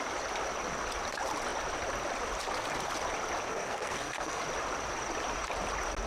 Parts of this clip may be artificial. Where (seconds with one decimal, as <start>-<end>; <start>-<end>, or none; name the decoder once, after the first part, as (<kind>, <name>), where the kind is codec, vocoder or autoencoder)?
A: 3.5-4.4 (codec, SNAC)